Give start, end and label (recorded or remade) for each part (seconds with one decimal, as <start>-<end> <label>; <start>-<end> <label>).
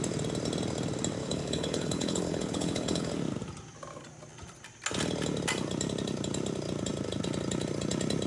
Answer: 0.0-1.2 recorded; 1.2-3.1 remade; 3.1-8.3 recorded